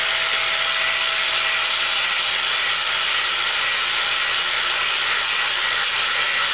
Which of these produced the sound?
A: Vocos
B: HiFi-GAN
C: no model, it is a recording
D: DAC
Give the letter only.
C